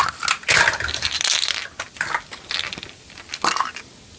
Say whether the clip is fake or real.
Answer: real